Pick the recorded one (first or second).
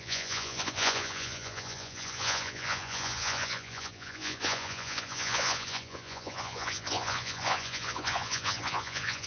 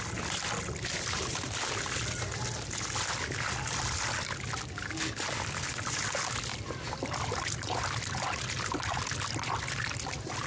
second